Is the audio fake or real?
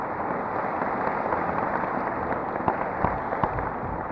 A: real